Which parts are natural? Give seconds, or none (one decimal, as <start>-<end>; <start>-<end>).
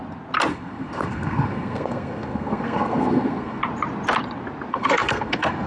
0.0-0.5; 3.6-4.7